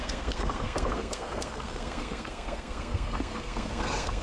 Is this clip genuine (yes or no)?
no